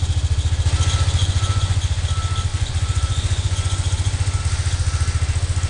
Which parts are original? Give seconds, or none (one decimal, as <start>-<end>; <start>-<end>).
0.0-1.2; 2.0-2.5; 4.4-5.7